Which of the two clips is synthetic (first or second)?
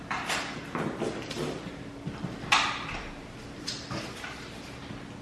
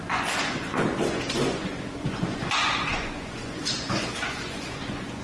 second